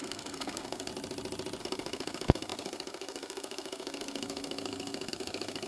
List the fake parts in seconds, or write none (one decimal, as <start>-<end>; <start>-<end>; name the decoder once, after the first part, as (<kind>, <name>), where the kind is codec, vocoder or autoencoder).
0.0-0.9 (codec, SNAC); 1.6-5.7